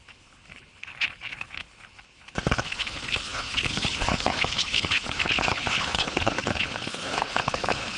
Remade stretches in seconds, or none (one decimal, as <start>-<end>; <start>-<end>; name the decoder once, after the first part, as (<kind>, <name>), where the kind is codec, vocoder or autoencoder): 0.0-8.0 (codec, HILCodec)